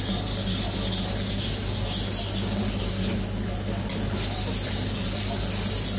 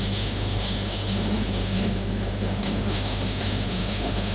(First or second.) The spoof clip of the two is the second